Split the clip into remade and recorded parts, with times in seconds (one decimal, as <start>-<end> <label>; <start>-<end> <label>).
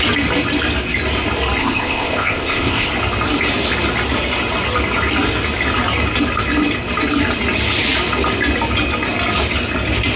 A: 0.0-1.6 recorded; 1.6-2.9 remade; 2.9-10.2 recorded